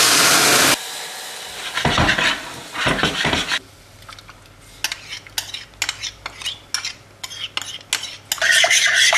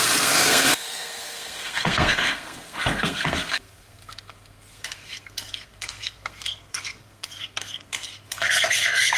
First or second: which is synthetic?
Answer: second